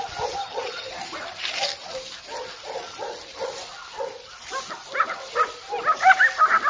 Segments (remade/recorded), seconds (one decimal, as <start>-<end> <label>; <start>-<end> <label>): 0.0-0.4 recorded; 0.4-0.9 remade; 0.9-6.7 recorded